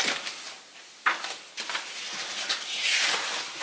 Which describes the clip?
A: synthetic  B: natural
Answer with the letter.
B